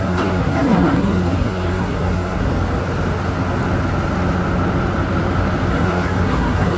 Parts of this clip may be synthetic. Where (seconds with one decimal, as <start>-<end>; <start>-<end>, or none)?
0.0-2.5; 5.7-6.8